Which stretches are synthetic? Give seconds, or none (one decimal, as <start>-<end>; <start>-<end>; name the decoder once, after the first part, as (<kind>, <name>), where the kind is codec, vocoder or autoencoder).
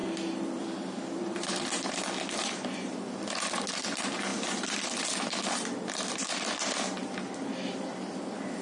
none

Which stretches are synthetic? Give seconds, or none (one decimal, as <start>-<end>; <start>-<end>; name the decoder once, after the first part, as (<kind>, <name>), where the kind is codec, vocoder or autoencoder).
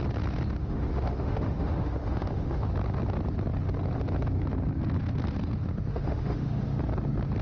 0.6-2.7 (autoencoder, DAC-VAE); 5.9-6.6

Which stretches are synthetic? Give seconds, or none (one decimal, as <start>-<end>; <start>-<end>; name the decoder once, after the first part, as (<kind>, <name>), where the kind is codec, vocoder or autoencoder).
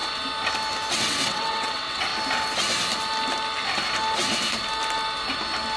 0.9-2.1 (vocoder, WaveNeXt)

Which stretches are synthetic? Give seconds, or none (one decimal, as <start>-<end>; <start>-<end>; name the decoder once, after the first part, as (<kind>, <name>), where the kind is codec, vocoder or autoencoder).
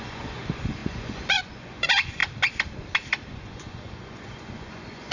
0.0-2.2 (vocoder, Vocos); 3.3-5.1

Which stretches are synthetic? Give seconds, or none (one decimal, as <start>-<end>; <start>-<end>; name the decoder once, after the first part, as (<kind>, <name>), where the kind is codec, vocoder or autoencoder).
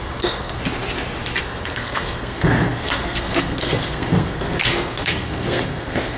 0.0-0.6 (codec, SNAC); 1.4-6.2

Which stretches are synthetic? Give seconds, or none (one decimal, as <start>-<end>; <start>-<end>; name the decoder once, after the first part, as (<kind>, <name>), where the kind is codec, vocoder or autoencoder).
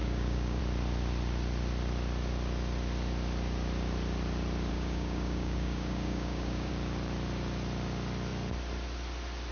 0.0-0.6 (codec, DAC); 4.7-6.7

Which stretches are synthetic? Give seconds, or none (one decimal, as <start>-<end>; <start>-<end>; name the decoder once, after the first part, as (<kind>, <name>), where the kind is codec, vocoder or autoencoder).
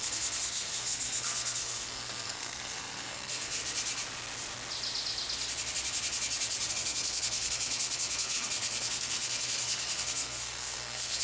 0.0-3.6 (codec, SNAC); 6.7-11.2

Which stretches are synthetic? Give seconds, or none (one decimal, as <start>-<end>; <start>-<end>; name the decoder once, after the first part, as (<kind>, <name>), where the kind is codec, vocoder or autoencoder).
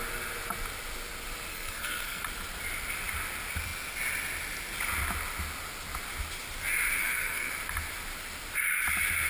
1.5-2.2 (codec, SNAC); 7.0-7.5